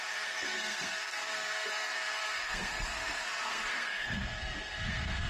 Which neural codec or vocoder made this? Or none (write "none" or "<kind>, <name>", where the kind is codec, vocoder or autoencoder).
codec, SNAC